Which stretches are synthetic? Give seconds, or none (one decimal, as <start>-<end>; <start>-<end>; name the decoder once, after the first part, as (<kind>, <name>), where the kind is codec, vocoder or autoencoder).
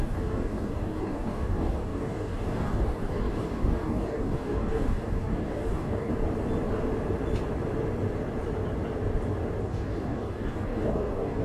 0.0-6.1 (codec, DAC); 9.6-11.4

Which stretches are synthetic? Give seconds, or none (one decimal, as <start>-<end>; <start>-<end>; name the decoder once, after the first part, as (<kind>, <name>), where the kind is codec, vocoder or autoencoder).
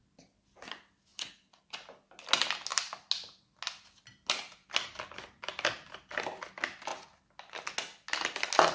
none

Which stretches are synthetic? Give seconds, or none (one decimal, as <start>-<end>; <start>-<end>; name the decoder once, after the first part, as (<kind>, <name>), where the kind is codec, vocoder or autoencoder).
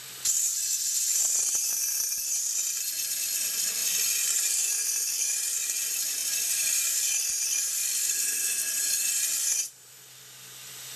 3.8-4.5 (vocoder, BigVGAN v2); 6.2-6.9; 7.8-9.9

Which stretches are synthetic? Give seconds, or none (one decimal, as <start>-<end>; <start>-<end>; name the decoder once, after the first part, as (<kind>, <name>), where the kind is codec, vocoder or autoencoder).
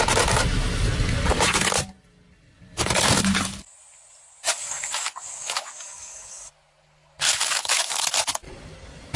4.5-6.5 (codec, DAC); 7.3-8.0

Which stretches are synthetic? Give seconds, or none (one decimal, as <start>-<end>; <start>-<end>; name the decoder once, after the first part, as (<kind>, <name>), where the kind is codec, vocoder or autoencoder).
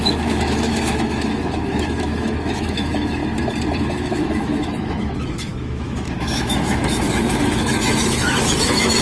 0.0-3.2 (autoencoder, DAC-VAE); 3.8-9.0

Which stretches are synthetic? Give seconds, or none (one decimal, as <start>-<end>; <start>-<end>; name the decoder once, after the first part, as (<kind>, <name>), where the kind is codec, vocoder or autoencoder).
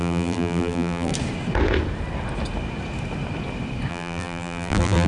0.0-1.1 (vocoder, BigVGAN v2); 3.9-5.1